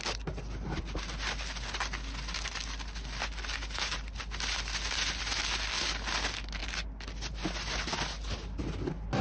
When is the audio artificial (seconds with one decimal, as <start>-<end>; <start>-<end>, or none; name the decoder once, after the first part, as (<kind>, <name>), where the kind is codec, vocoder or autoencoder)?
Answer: none